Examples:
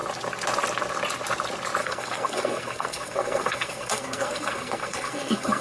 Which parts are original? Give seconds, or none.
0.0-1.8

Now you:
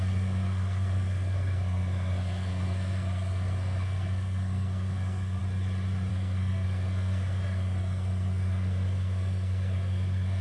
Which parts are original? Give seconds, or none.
5.4-6.1

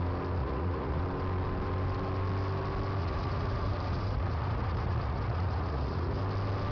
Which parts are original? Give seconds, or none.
0.0-0.4; 1.0-3.0; 6.2-6.7

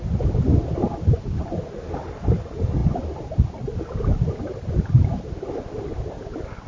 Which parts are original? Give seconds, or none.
0.0-6.7

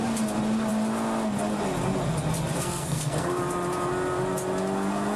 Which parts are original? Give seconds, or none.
0.0-2.6; 3.4-5.2

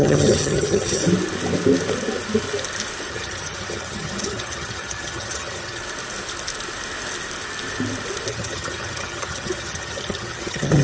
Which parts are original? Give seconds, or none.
1.0-3.1; 5.8-8.3

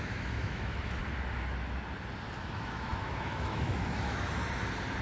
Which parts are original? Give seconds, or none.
1.0-2.4; 4.4-5.0